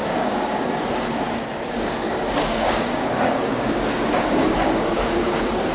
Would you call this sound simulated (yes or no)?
yes